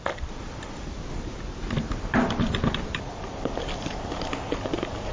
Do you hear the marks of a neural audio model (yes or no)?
no